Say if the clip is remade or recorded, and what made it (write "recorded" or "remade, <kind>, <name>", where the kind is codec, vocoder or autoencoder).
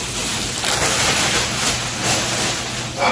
recorded